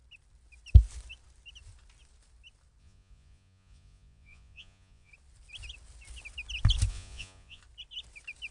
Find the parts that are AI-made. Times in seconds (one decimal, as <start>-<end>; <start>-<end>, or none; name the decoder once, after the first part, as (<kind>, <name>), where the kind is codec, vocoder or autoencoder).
2.8-5.1 (vocoder, Vocos); 6.9-7.6